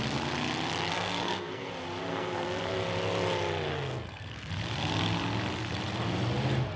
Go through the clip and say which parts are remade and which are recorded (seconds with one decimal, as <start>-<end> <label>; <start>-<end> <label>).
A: 0.0-0.9 recorded; 0.9-1.7 remade; 1.7-2.1 recorded; 2.1-2.7 remade; 2.7-3.7 recorded; 3.7-4.5 remade; 4.5-6.8 recorded